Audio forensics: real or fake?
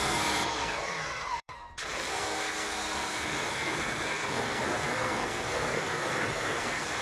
fake